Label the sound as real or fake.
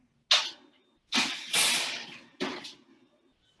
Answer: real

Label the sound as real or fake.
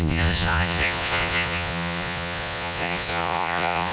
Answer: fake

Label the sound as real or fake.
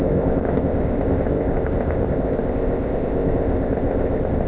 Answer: fake